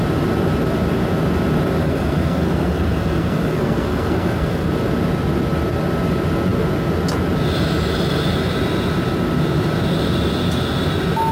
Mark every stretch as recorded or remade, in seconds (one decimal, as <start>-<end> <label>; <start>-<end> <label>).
0.0-1.8 recorded; 1.8-4.7 remade; 4.7-11.3 recorded

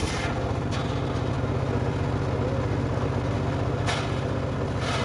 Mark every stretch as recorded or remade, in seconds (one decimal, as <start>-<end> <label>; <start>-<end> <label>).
0.0-5.0 recorded